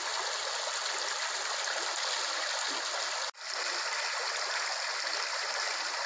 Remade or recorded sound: recorded